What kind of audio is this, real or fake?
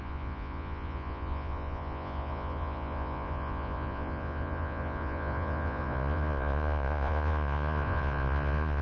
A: fake